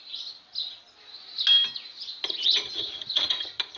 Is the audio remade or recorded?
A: recorded